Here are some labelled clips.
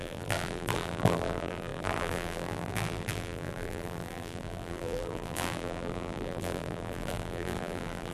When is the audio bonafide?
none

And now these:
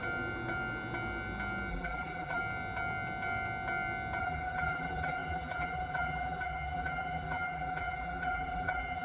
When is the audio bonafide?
0.0-1.7; 2.4-4.2

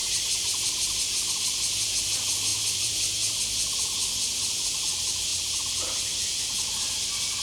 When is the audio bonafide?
0.0-2.5; 3.4-7.4

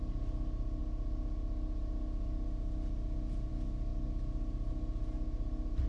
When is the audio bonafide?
0.0-0.8; 3.5-3.9; 4.7-5.9

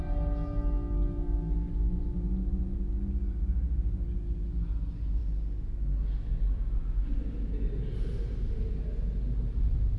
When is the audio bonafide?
0.0-10.0

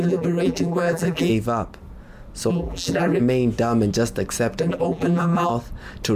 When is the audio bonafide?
1.3-2.5; 3.2-4.6; 5.5-6.2

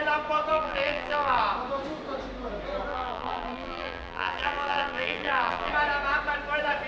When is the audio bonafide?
0.0-0.5; 1.4-2.9; 5.7-6.9

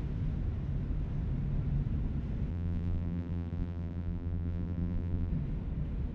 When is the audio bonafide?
0.0-2.5; 5.3-6.1